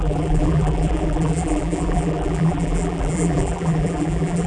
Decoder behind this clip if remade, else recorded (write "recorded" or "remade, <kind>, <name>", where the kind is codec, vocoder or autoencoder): remade, vocoder, BigVGAN v2